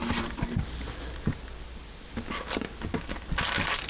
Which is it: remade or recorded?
recorded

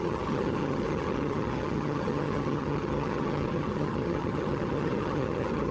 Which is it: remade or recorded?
remade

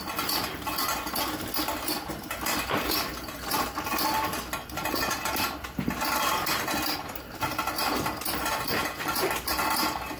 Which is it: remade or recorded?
recorded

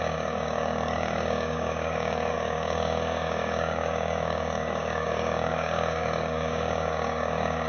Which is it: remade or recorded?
remade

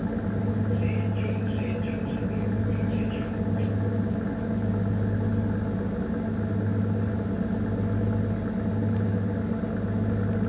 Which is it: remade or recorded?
recorded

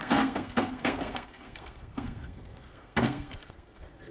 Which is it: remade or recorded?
remade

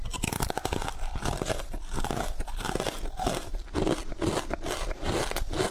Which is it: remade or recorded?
recorded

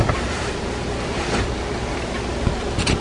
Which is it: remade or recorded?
recorded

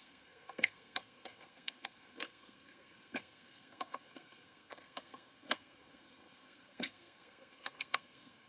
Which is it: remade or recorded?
remade